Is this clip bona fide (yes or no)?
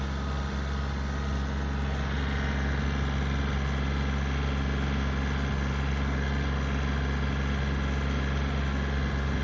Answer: yes